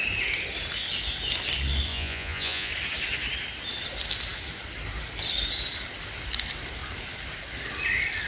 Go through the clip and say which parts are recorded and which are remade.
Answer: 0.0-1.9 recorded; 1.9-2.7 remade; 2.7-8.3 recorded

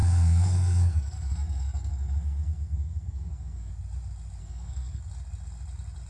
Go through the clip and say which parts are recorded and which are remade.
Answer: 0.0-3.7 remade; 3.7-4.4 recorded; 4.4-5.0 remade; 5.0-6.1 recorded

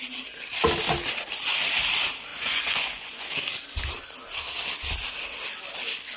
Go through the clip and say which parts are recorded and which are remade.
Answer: 0.0-2.3 recorded; 2.3-3.3 remade; 3.3-6.2 recorded